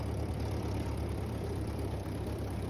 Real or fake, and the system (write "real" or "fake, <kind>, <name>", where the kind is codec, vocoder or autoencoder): fake, vocoder, BigVGAN v2